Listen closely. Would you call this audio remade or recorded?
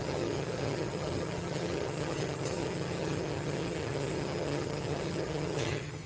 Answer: remade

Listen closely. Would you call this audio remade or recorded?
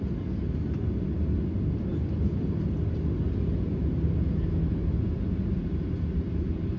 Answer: recorded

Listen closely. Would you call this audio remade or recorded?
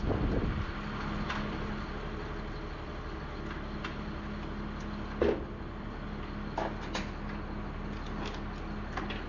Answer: recorded